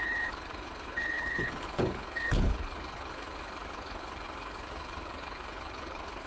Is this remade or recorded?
remade